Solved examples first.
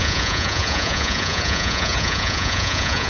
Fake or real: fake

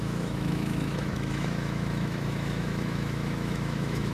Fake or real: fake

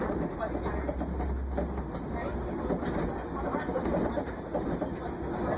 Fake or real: real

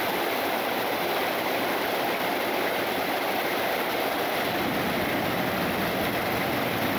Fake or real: real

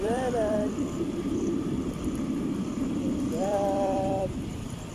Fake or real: fake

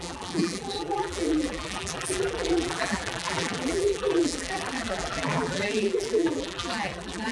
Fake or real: fake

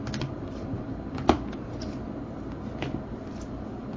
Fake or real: real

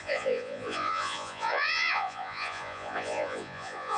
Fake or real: fake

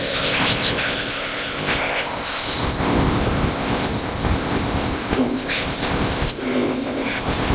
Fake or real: fake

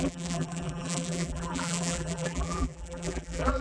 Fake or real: fake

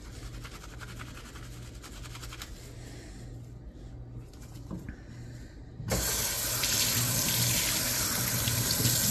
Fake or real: real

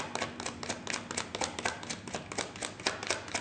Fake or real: real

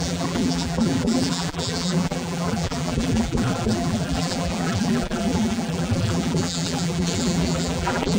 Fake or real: fake